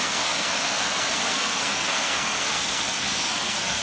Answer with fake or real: fake